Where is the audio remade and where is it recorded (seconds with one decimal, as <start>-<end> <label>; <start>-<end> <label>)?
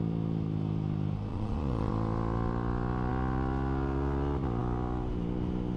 0.0-1.3 recorded; 1.3-1.9 remade; 1.9-5.8 recorded